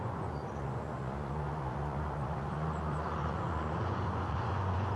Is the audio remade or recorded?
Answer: remade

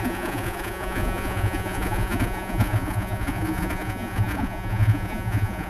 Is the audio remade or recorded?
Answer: remade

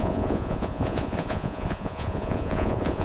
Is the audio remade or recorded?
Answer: remade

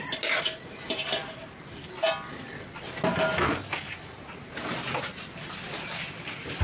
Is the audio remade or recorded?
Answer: recorded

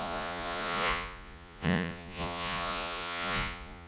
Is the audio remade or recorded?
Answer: remade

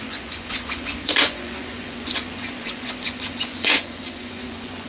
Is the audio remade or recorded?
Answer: remade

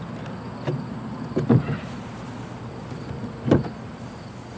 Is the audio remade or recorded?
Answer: recorded